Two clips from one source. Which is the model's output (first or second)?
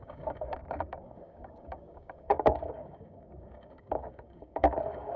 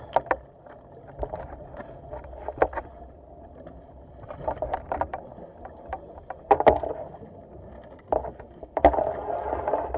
first